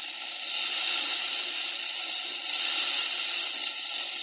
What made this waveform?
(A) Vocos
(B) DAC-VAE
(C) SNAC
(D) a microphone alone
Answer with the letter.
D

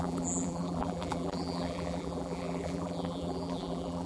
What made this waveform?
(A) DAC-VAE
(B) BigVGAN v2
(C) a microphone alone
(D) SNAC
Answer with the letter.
B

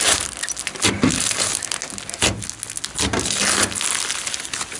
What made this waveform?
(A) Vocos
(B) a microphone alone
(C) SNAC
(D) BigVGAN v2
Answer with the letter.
B